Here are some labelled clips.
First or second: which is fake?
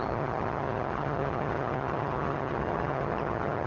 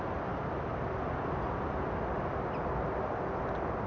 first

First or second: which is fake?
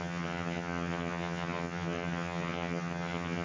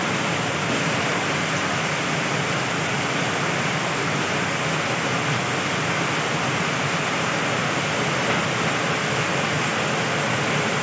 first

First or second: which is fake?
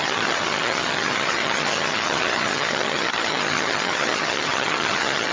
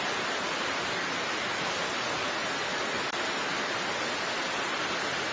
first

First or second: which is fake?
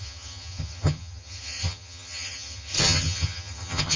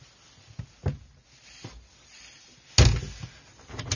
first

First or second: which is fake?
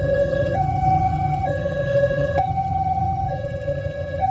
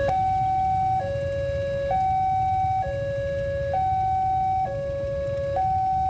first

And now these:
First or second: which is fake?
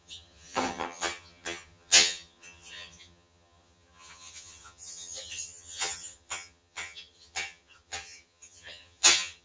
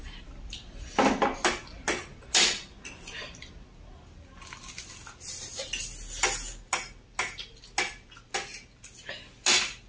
first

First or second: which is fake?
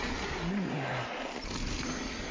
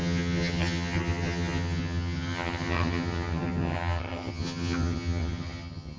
second